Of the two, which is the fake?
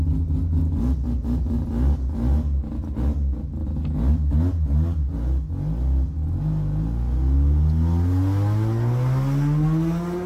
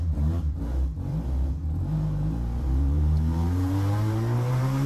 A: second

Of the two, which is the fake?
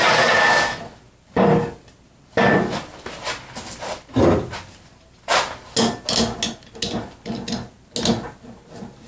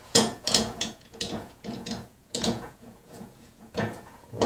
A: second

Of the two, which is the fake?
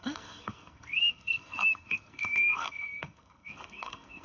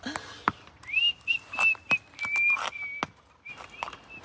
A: first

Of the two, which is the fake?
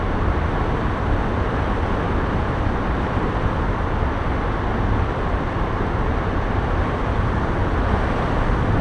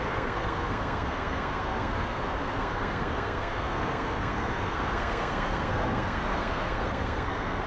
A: second